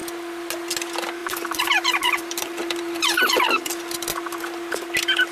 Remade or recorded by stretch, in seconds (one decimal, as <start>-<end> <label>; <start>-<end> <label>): 0.0-1.2 recorded; 1.2-4.4 remade; 4.4-5.3 recorded